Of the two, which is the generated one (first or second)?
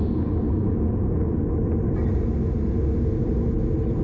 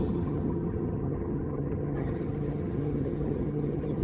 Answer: second